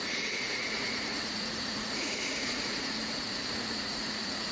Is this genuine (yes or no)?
no